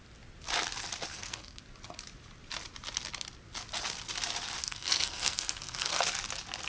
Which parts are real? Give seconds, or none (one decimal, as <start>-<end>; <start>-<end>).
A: 0.0-1.1; 1.6-4.6; 6.0-6.7